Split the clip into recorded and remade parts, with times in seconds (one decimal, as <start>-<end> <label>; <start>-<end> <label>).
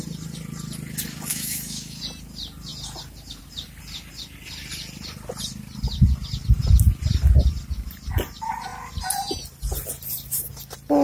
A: 0.0-1.3 recorded; 1.3-2.0 remade; 2.0-11.0 recorded